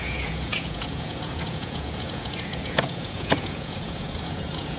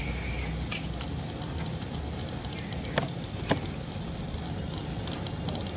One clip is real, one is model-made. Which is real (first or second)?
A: second